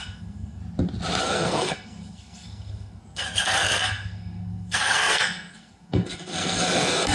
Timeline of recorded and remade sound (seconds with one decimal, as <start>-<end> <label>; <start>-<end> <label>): 0.0-0.6 remade; 0.6-1.2 recorded; 1.2-7.1 remade